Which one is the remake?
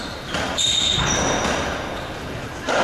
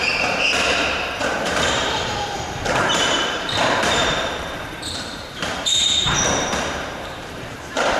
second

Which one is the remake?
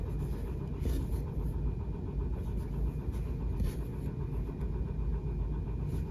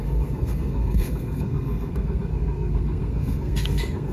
second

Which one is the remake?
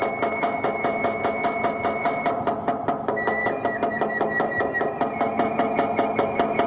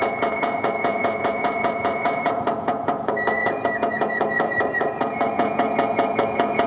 second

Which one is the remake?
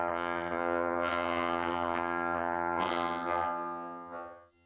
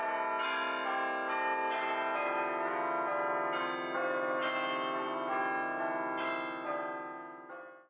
first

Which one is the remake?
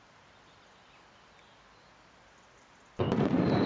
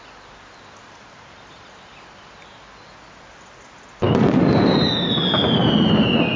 first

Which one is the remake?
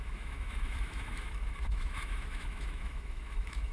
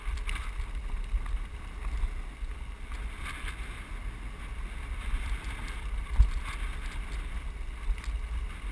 first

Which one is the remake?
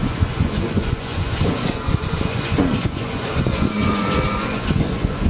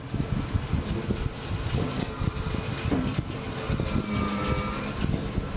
first